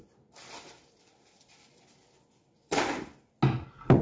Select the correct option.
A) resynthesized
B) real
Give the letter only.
B